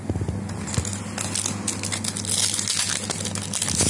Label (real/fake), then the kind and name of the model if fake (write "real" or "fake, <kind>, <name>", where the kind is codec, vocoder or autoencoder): real